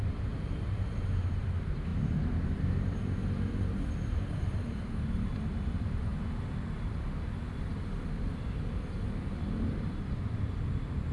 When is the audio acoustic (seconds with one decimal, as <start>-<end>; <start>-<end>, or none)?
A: 6.1-9.7